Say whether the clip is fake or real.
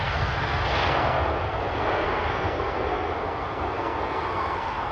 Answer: fake